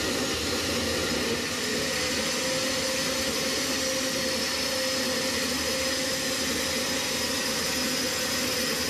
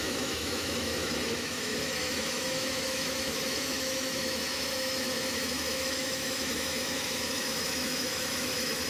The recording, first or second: first